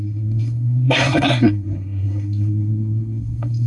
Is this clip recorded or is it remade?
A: remade